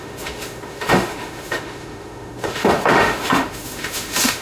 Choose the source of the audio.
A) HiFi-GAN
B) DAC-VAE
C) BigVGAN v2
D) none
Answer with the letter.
B